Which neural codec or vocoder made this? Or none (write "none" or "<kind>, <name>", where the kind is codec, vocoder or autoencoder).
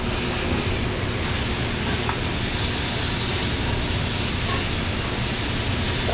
none